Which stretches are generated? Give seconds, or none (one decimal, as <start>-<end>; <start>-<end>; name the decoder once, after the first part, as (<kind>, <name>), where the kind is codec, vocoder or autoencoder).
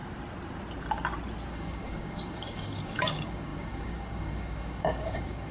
1.5-5.5 (codec, DAC)